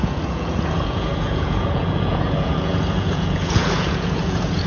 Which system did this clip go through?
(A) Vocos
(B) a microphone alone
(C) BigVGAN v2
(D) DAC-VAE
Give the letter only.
A